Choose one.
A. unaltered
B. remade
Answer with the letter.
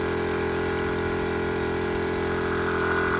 B